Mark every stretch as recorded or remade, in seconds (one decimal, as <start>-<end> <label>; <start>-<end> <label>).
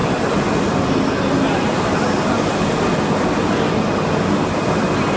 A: 0.0-5.2 recorded